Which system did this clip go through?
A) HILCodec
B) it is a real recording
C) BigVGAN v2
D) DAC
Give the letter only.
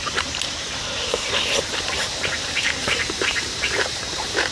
C